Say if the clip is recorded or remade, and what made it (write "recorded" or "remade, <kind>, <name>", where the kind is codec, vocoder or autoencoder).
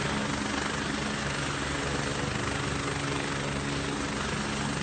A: recorded